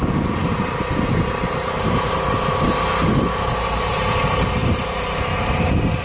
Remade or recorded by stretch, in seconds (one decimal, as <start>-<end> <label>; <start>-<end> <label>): 0.0-6.0 recorded